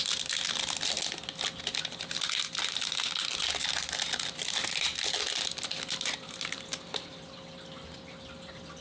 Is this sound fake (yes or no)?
no